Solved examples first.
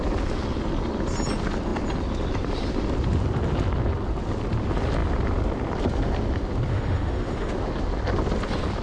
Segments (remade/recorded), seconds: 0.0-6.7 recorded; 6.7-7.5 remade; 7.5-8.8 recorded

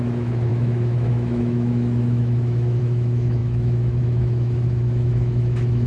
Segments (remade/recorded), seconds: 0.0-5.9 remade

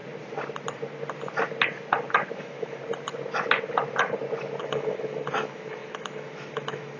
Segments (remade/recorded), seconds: 0.0-2.4 recorded; 2.4-2.8 remade; 2.8-4.6 recorded; 4.6-7.0 remade

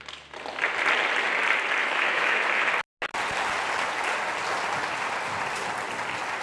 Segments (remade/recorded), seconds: 0.0-1.8 recorded; 1.8-2.7 remade; 2.7-6.4 recorded